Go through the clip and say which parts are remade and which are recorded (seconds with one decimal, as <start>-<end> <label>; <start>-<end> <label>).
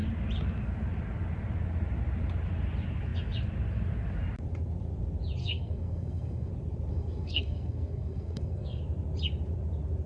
0.0-5.4 recorded; 5.4-6.5 remade; 6.5-6.9 recorded; 6.9-8.8 remade; 8.8-10.1 recorded